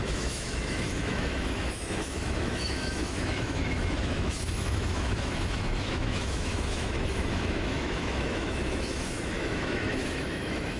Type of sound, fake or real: fake